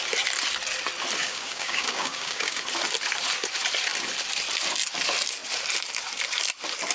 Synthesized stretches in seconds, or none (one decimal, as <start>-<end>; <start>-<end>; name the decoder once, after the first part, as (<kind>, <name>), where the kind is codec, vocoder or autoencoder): 1.2-2.6 (codec, DAC)